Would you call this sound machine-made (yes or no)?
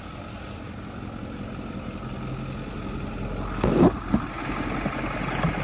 no